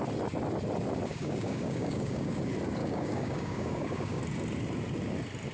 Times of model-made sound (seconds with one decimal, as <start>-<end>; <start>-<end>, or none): 1.1-2.4; 2.8-4.2